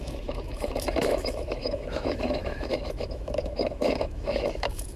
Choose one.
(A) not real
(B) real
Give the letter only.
A